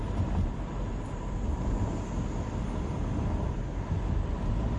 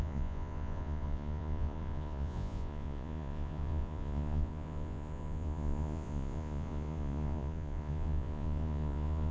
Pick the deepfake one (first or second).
second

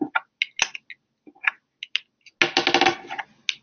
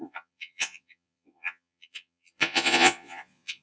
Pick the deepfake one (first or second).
second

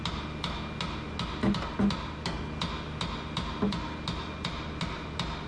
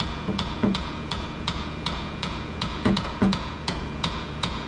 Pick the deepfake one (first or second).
second